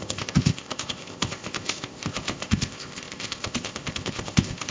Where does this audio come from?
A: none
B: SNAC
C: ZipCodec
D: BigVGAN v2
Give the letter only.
C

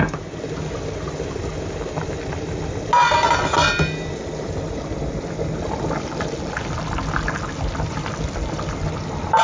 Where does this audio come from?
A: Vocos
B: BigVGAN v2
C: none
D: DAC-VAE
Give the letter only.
C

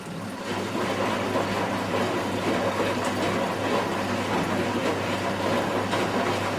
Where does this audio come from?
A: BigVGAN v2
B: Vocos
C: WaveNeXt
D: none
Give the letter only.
D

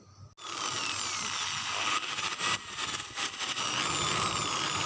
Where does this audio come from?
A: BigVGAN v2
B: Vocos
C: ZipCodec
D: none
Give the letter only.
D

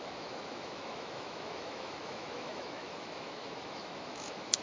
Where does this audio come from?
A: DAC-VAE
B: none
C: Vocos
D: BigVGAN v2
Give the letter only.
A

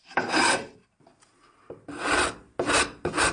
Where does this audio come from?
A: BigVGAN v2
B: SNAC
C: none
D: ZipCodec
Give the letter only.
C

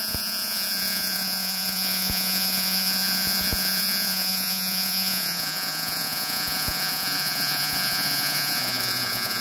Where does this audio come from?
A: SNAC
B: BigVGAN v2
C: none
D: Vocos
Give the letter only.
D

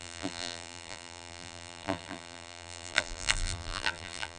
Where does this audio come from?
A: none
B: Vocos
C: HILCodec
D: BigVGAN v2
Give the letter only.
D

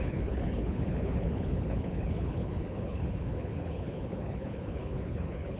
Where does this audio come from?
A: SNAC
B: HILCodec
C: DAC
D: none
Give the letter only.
B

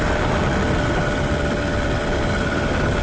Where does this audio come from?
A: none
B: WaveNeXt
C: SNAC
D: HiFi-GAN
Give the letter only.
A